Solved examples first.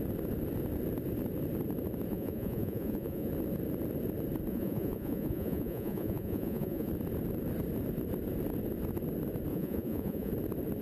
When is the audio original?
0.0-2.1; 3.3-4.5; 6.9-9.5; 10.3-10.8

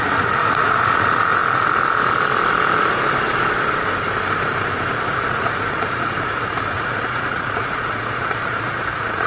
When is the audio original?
1.4-4.9

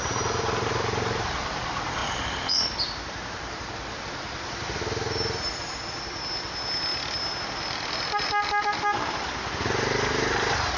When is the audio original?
0.0-10.8

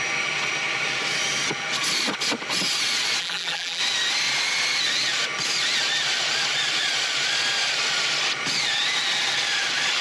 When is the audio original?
0.0-3.2; 3.8-10.0

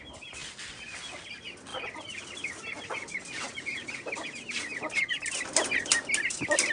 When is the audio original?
0.0-1.7; 5.0-6.7

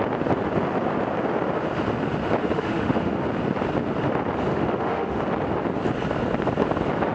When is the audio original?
0.0-2.4; 3.1-4.5; 5.2-7.1

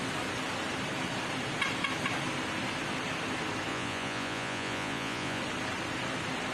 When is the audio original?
0.0-3.7; 5.4-6.5